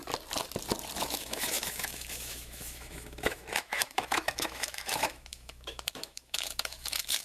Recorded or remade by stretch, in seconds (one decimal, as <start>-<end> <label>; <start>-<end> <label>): 0.0-1.0 recorded; 1.0-7.2 remade